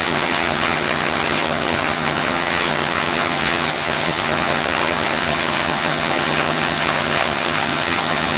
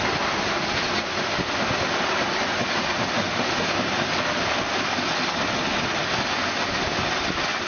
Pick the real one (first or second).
second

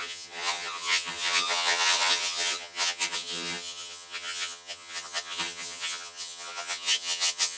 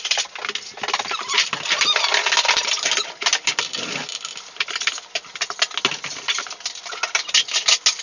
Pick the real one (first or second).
second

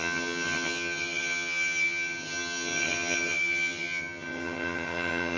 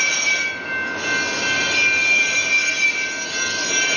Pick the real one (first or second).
second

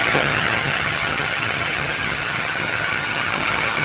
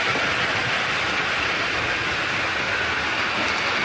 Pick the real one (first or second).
second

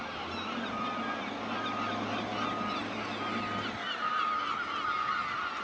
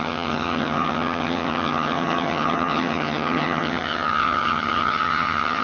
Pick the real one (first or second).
first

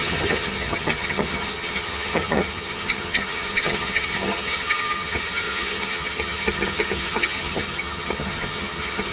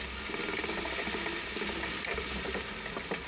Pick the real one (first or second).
second